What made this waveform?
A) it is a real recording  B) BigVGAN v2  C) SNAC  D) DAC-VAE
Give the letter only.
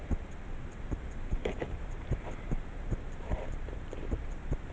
B